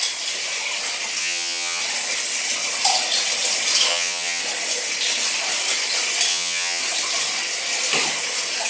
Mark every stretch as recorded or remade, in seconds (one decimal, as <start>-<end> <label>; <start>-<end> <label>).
0.0-1.2 recorded; 1.2-1.8 remade; 1.8-3.9 recorded; 3.9-4.4 remade; 4.4-6.3 recorded; 6.3-6.8 remade; 6.8-8.7 recorded